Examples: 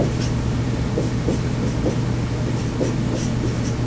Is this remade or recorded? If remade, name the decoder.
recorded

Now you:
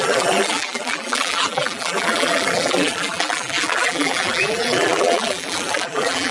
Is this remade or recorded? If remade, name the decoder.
remade, vocoder, BigVGAN v2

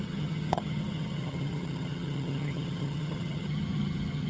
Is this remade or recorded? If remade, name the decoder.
remade, vocoder, HiFi-GAN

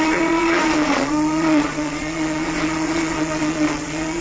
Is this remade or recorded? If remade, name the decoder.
remade, vocoder, Vocos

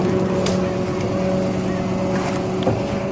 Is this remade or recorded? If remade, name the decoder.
recorded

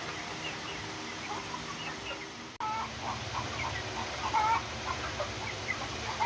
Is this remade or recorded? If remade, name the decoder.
recorded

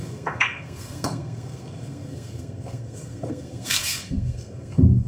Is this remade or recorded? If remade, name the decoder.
remade, codec, SNAC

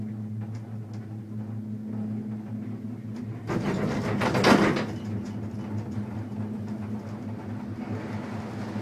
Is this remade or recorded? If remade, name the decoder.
recorded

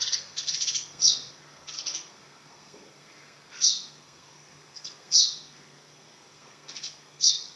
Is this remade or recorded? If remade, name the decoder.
remade, codec, SNAC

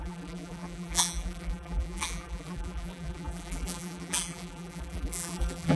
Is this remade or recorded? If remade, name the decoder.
remade, vocoder, BigVGAN v2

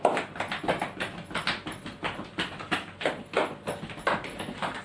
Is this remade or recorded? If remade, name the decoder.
recorded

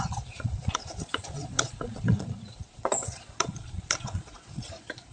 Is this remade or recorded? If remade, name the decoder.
remade, vocoder, Vocos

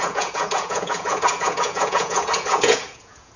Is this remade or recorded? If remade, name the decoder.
remade, vocoder, Vocos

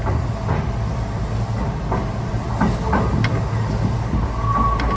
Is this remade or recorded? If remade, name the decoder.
recorded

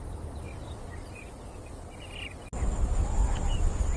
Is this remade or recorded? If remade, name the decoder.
recorded